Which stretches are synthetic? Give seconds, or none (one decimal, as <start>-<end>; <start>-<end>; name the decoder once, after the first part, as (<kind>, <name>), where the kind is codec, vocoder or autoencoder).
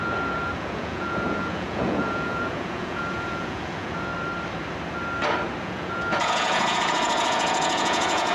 0.0-4.1 (vocoder, Vocos); 5.6-8.3